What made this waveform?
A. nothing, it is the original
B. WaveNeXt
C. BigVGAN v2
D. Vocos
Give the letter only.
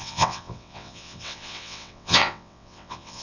B